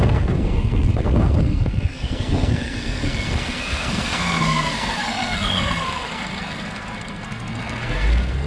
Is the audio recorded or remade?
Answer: remade